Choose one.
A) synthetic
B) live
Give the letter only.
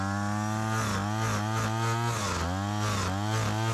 B